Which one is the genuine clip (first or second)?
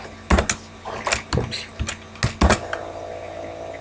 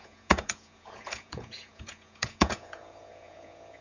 first